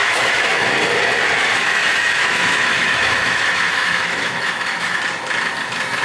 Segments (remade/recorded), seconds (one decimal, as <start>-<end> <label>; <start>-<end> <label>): 0.0-0.7 remade; 0.7-1.4 recorded; 1.4-5.0 remade; 5.0-6.0 recorded